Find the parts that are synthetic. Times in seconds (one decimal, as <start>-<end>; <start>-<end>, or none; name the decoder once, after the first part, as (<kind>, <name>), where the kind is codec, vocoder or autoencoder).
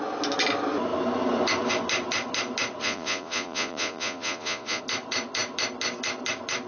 2.8-4.8 (vocoder, Vocos)